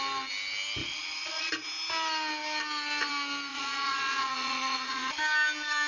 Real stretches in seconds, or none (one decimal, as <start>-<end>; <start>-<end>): 0.0-0.8; 1.5-3.5; 5.2-5.9